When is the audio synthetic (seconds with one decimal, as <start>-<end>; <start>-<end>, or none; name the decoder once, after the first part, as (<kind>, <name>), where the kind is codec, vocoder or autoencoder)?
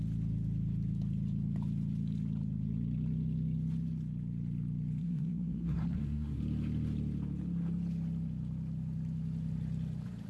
5.0-6.4 (codec, SNAC)